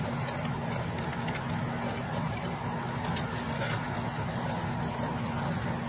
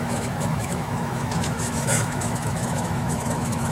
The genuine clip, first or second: first